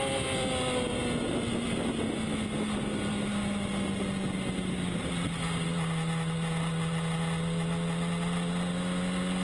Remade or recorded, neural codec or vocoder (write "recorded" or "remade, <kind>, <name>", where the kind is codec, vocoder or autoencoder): recorded